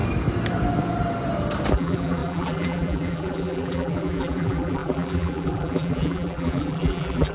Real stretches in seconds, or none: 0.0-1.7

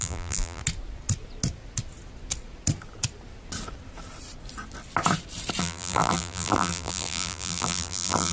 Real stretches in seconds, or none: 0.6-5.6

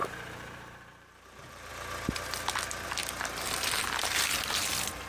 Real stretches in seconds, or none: 1.7-5.1

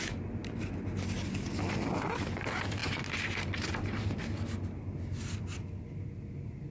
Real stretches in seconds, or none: 0.0-6.7

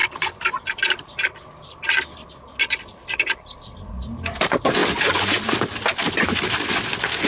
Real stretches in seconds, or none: 0.6-4.8; 5.6-7.3

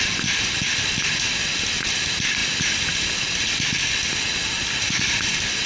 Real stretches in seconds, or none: none

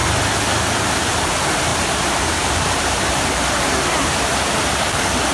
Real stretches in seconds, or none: 0.0-0.9

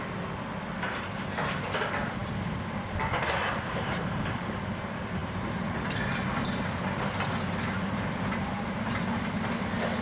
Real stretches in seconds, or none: 0.0-10.0